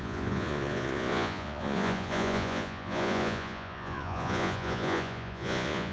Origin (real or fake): fake